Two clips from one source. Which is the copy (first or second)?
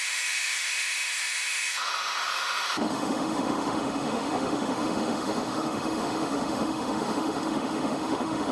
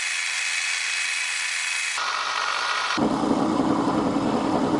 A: first